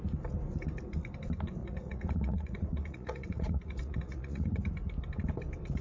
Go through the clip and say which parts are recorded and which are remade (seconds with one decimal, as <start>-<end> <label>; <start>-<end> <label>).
0.0-1.6 recorded; 1.6-4.6 remade; 4.6-5.8 recorded